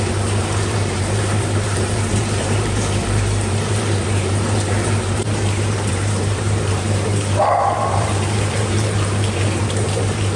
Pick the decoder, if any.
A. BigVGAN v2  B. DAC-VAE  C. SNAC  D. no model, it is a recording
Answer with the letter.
A